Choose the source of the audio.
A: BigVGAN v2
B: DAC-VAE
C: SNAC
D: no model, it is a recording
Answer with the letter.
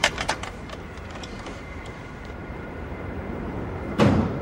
A